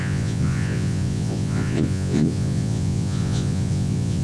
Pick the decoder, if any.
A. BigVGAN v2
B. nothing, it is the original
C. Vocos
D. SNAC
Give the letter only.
C